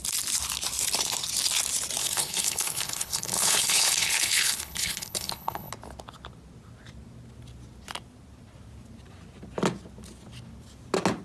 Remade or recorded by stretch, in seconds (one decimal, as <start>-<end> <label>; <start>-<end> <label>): 0.0-2.0 recorded; 2.0-5.7 remade; 5.7-11.2 recorded